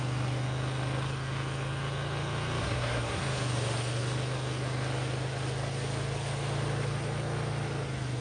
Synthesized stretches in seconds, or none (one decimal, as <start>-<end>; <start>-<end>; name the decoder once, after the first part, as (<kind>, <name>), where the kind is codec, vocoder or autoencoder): 2.6-3.2 (codec, SNAC)